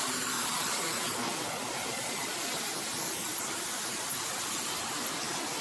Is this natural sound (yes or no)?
yes